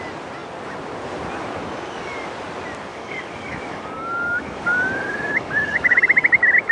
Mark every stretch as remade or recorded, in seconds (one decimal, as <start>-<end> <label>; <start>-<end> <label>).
0.0-2.9 recorded; 2.9-6.0 remade; 6.0-6.7 recorded